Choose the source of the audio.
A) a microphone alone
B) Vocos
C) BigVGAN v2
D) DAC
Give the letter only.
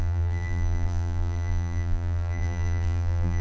C